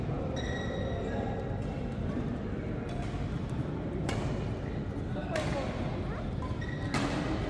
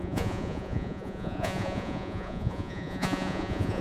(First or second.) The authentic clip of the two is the first